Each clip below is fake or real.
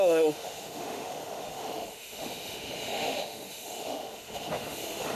fake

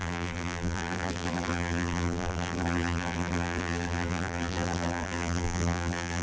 fake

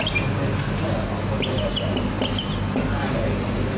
real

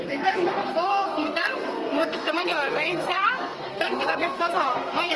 fake